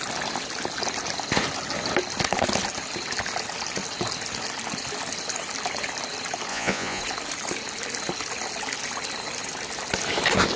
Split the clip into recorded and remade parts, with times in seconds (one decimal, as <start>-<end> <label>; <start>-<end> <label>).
0.0-6.5 recorded; 6.5-7.0 remade; 7.0-10.6 recorded